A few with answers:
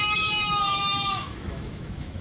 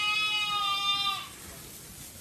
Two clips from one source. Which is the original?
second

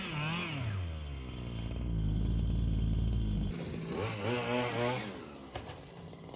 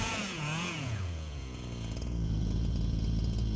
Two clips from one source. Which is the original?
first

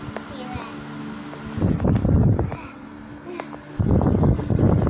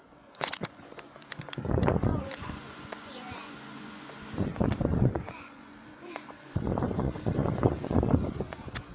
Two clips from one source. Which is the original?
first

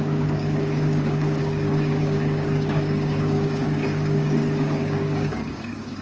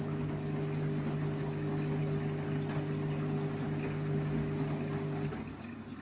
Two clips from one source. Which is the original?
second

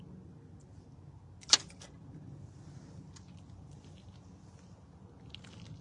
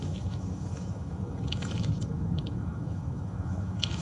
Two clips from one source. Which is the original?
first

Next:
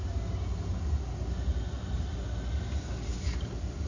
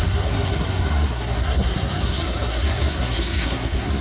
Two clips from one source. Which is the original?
first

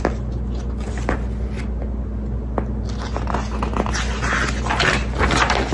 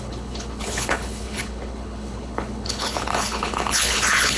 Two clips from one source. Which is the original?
first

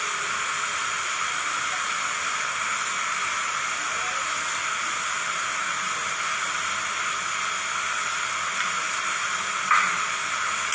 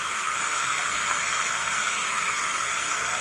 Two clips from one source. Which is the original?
first